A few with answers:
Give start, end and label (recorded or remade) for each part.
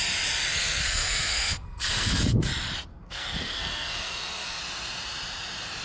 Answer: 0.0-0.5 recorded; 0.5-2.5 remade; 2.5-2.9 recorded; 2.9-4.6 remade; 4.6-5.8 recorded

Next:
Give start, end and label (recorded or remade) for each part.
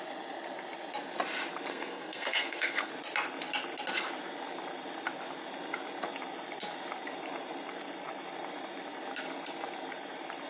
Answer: 0.0-1.7 recorded; 1.7-2.9 remade; 2.9-10.5 recorded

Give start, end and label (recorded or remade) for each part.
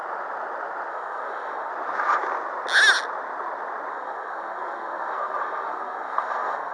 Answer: 0.0-0.9 recorded; 0.9-1.7 remade; 1.7-3.9 recorded; 3.9-6.7 remade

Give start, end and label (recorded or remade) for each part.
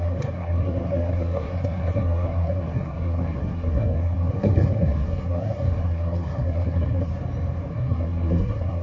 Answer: 0.0-7.1 remade; 7.1-7.7 recorded; 7.7-8.8 remade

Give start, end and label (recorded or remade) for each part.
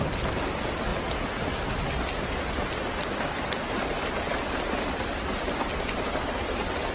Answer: 0.0-6.9 recorded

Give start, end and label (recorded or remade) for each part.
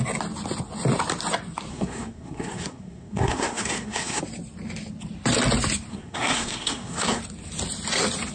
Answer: 0.0-1.7 recorded; 1.7-4.2 remade; 4.2-5.9 recorded; 5.9-7.2 remade; 7.2-8.3 recorded